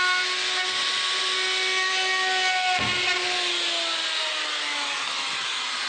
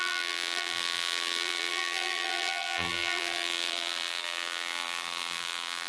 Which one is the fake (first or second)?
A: second